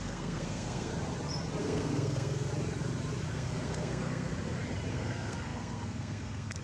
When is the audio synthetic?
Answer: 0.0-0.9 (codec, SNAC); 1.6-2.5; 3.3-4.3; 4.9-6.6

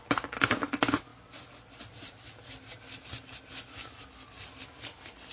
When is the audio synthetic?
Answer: none

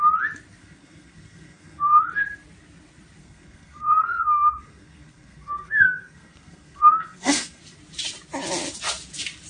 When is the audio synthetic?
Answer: 0.6-2.0 (codec, SNAC); 3.2-7.6